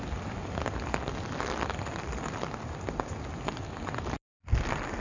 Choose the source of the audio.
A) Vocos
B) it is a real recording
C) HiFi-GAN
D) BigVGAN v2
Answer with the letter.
B